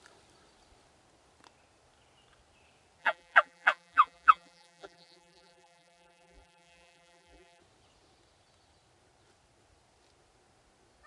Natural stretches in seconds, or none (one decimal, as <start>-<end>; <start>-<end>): 0.0-3.0; 7.6-11.1